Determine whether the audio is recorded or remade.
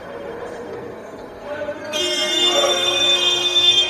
remade